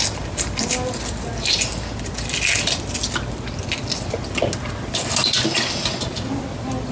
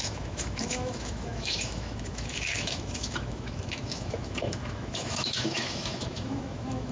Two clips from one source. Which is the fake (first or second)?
second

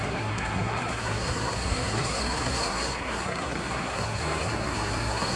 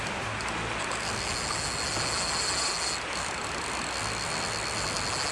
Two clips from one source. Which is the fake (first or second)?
first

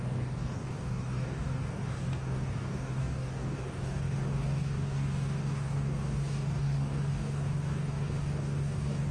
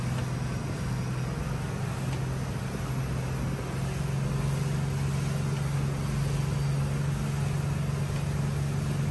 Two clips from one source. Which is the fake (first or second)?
first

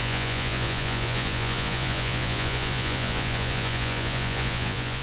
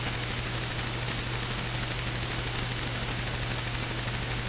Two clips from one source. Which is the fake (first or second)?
first